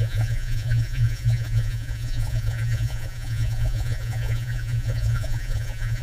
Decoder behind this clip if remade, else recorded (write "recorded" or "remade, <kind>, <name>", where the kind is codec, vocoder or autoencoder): remade, vocoder, Vocos